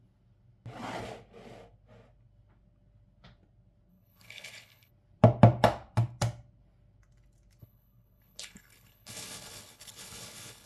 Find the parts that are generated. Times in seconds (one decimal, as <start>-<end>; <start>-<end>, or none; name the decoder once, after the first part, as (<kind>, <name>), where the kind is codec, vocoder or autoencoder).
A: 3.9-4.9 (codec, HILCodec); 7.6-10.7